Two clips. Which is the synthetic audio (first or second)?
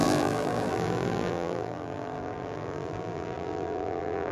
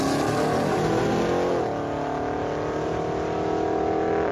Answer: first